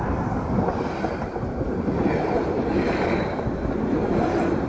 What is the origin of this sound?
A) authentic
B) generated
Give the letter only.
A